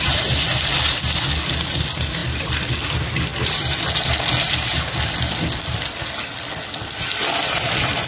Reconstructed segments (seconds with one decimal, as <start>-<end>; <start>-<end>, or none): none